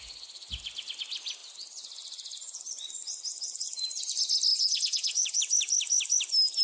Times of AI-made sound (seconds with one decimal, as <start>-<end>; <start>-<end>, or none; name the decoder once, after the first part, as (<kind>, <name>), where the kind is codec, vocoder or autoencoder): 4.5-5.4 (vocoder, Vocos)

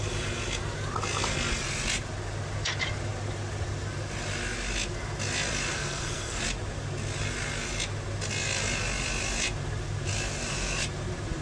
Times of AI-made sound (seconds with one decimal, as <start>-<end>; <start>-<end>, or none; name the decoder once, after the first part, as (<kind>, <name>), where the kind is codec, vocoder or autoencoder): 5.7-6.4 (codec, SNAC)

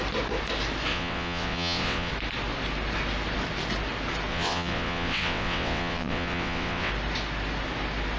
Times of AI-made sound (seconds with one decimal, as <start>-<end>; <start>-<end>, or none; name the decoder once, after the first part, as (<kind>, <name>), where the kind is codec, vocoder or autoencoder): 0.9-2.1 (vocoder, WaveNeXt); 4.3-6.9

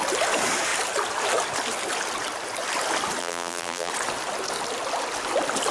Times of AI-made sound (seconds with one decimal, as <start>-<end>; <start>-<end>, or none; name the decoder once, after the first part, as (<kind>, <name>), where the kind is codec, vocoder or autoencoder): 3.2-3.9 (vocoder, BigVGAN v2)